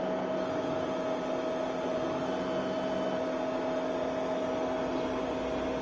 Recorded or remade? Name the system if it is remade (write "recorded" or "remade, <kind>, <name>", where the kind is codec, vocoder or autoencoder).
recorded